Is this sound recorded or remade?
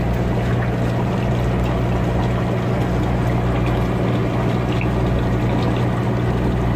recorded